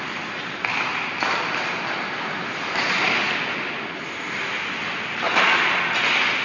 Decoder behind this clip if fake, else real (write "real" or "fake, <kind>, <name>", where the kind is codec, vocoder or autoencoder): real